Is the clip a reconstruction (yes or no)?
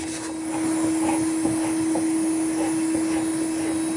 no